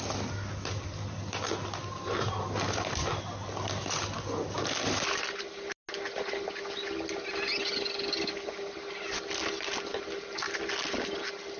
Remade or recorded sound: recorded